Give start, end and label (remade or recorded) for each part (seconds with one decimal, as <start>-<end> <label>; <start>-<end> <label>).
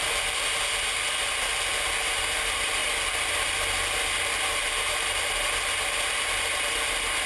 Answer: 0.0-7.3 recorded